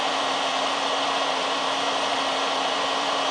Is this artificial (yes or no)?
yes